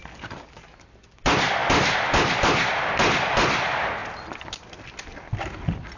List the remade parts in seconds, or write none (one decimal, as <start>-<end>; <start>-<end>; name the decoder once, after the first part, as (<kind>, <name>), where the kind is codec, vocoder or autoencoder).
none